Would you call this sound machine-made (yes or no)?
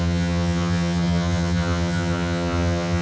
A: yes